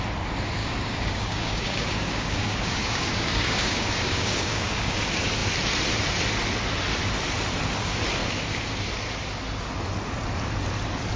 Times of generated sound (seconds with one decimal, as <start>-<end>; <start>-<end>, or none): 0.6-5.0